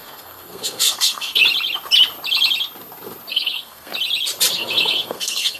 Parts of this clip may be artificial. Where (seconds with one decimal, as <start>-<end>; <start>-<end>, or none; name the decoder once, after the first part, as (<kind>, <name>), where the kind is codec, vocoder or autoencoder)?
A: 0.0-1.4 (codec, SNAC); 3.3-3.9; 4.5-5.6